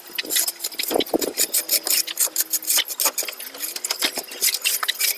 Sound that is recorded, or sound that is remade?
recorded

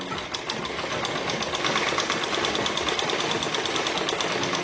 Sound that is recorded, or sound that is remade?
recorded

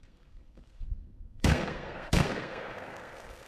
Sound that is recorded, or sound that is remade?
remade